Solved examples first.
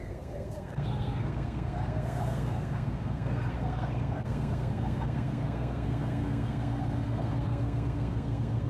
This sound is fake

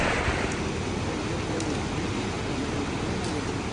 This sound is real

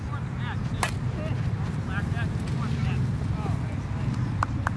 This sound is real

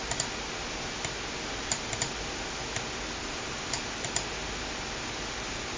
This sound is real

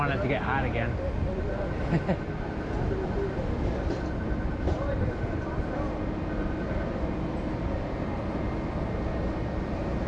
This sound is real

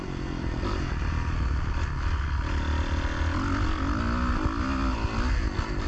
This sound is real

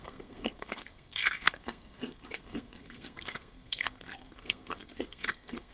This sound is fake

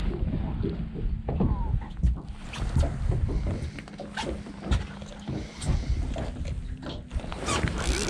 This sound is real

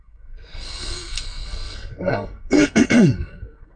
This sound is fake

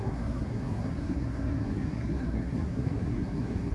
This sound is fake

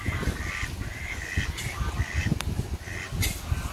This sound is real